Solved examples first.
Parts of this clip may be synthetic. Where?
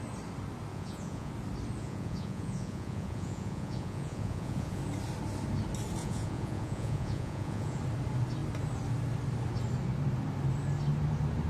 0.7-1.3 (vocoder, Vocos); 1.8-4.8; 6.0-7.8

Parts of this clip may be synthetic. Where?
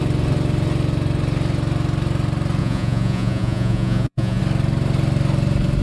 2.6-4.4 (vocoder, Vocos)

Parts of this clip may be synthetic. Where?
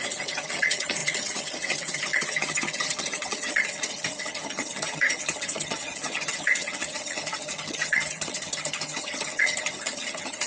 0.0-10.5 (vocoder, HiFi-GAN)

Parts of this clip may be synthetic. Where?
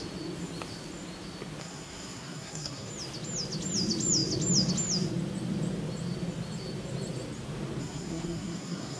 1.6-2.9 (codec, SNAC); 7.8-9.0